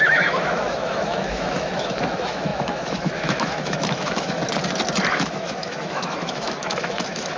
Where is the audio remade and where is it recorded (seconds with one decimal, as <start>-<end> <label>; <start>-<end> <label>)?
0.0-4.4 remade; 4.4-5.1 recorded; 5.1-7.4 remade